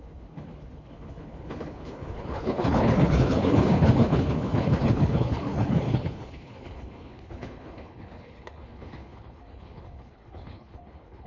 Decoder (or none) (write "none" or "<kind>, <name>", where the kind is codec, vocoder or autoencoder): codec, HILCodec